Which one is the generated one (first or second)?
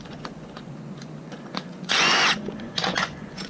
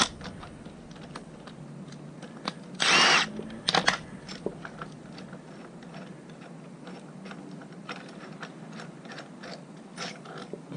first